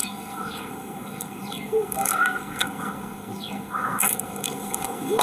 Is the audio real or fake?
fake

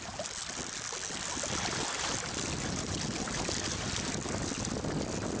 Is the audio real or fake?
real